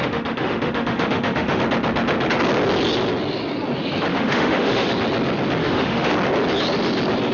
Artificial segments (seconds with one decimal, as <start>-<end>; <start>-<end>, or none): 0.0-1.6; 4.1-4.9; 5.6-6.1